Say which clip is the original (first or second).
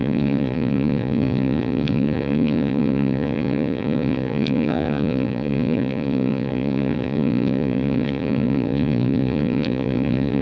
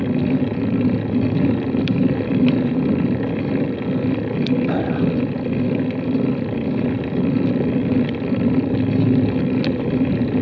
second